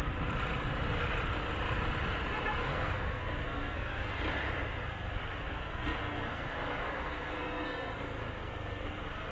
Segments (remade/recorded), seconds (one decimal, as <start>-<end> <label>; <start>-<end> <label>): 0.0-2.7 recorded; 2.7-4.1 remade; 4.1-4.8 recorded; 4.8-9.3 remade